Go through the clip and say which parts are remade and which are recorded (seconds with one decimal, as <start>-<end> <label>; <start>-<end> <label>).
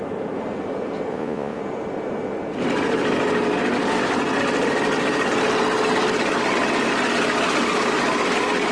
0.0-1.1 recorded; 1.1-1.6 remade; 1.6-8.7 recorded